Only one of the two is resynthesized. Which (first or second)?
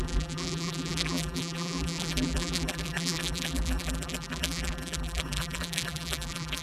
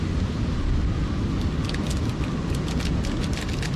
first